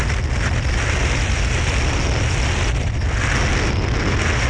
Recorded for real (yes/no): yes